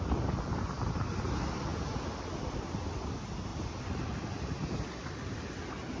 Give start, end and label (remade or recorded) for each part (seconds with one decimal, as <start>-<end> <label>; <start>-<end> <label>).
0.0-6.0 recorded